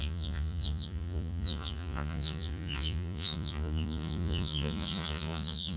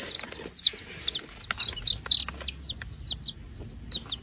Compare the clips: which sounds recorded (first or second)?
second